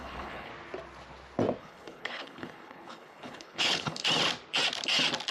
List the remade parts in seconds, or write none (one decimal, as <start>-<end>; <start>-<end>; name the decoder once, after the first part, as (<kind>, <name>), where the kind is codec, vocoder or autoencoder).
0.0-0.5 (codec, HILCodec); 1.6-4.0

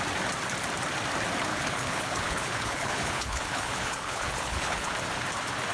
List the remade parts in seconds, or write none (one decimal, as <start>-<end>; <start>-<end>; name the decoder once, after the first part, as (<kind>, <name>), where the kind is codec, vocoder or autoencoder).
1.5-4.9 (codec, HILCodec)